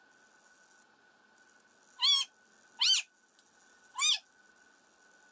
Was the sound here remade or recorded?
recorded